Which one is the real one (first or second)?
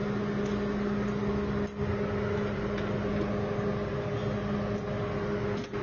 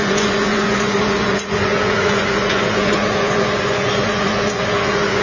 first